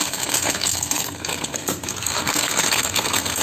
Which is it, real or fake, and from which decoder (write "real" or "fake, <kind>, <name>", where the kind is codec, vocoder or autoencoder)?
fake, codec, SNAC